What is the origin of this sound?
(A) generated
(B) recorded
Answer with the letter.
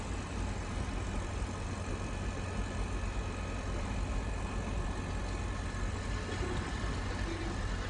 B